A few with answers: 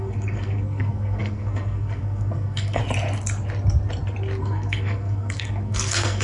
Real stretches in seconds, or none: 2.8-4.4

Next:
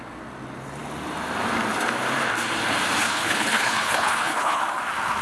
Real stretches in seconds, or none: 0.0-3.0; 4.6-5.2

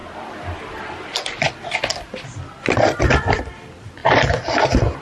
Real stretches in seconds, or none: 0.0-5.0

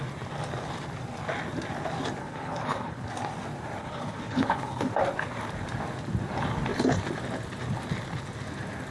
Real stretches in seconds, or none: 0.0-2.2; 3.1-3.8; 4.9-8.9

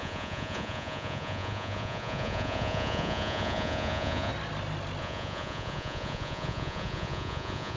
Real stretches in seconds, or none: 4.3-5.0

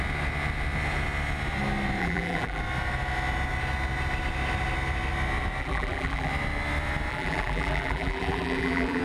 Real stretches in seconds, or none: 0.0-2.0; 2.6-5.6; 6.3-7.1

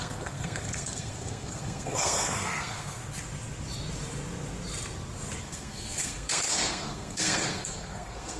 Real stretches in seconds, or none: 3.0-5.4

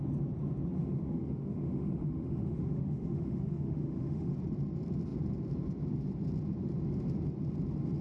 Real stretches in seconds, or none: 0.0-0.8; 4.3-8.0